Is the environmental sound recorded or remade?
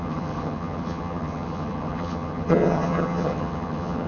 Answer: remade